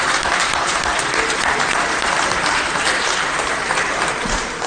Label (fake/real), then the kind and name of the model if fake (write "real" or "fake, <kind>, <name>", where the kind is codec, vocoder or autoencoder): fake, vocoder, BigVGAN v2